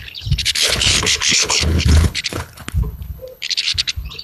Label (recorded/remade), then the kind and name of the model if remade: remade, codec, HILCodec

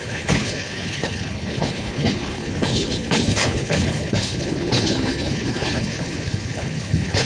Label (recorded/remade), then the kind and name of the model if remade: remade, codec, HILCodec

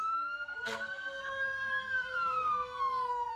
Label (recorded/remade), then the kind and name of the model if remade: remade, codec, SNAC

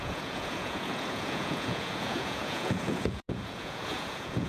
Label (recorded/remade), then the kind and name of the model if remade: remade, vocoder, Vocos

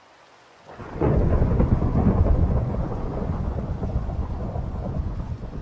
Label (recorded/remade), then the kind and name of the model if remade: remade, vocoder, Vocos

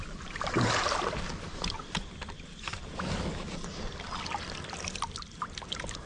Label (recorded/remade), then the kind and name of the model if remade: recorded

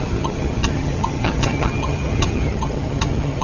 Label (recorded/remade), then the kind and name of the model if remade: remade, vocoder, HiFi-GAN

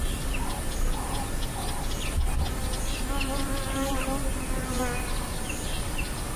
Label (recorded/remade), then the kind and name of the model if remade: recorded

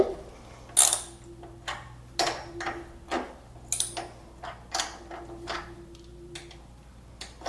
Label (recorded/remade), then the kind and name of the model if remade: recorded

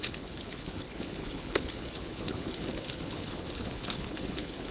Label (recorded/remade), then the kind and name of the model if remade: remade, codec, HILCodec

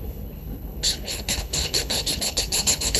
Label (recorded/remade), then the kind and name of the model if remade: remade, codec, HILCodec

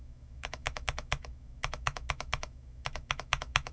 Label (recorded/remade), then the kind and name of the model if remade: remade, autoencoder, DAC-VAE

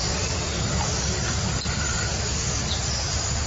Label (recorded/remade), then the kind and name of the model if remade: remade, vocoder, BigVGAN v2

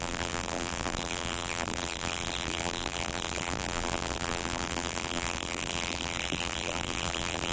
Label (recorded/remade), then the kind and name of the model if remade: remade, vocoder, BigVGAN v2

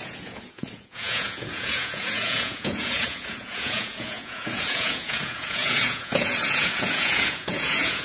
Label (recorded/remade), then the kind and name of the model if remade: remade, vocoder, Vocos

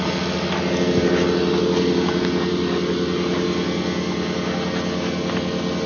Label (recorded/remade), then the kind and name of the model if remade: recorded